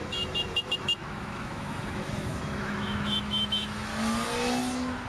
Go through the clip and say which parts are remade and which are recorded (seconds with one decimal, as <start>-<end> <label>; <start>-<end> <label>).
0.0-3.9 remade; 3.9-5.1 recorded

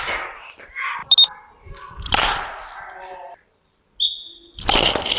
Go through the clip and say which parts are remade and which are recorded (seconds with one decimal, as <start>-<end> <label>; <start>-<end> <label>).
0.0-5.2 recorded

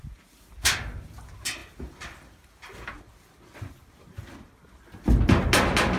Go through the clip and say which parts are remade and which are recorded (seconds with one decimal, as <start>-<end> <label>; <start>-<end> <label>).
0.0-1.6 recorded; 1.6-3.1 remade; 3.1-6.0 recorded

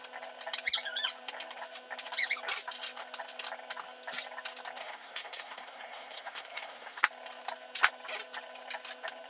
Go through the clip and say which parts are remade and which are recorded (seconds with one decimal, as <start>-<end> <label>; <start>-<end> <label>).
0.0-4.8 recorded; 4.8-7.0 remade; 7.0-9.3 recorded

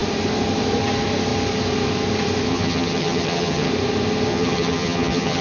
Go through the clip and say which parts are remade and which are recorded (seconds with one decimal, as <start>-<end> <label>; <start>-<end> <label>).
0.0-2.5 recorded; 2.5-3.7 remade; 3.7-4.3 recorded; 4.3-5.4 remade

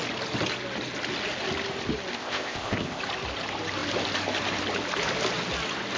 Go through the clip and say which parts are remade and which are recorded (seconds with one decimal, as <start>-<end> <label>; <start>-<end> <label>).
0.0-2.1 recorded; 2.1-3.0 remade; 3.0-6.0 recorded